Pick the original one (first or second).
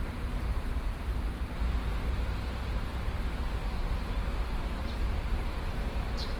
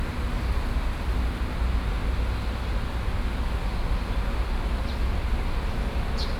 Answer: second